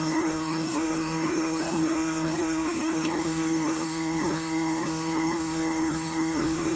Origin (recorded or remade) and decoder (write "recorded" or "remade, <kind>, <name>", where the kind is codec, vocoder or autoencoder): remade, codec, SNAC